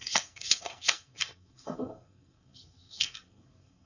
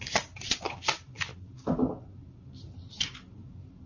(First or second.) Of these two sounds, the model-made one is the first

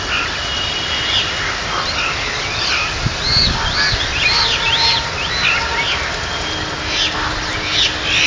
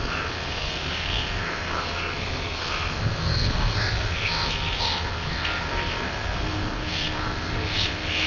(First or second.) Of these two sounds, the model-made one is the second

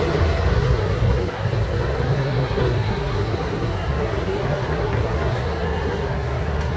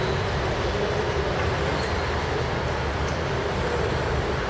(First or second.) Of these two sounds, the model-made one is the first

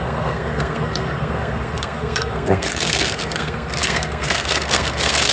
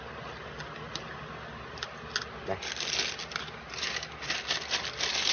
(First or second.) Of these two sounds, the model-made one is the first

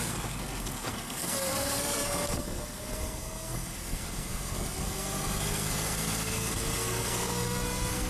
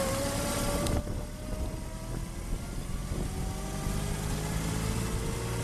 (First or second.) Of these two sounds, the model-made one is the first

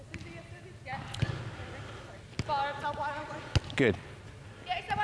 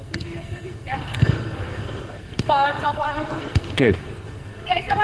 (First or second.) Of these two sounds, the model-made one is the second